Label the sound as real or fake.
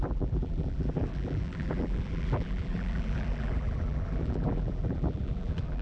fake